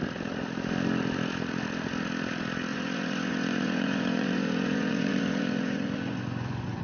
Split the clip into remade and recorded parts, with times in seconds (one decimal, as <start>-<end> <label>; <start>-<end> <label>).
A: 0.0-2.7 recorded; 2.7-6.8 remade